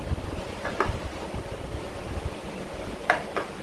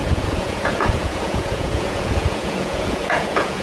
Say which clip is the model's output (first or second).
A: second